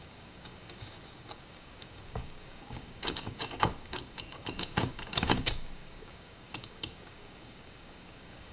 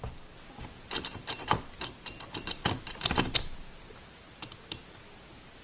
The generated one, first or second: first